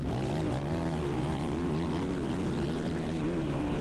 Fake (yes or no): no